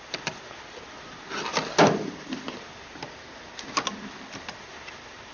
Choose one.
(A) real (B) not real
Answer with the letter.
A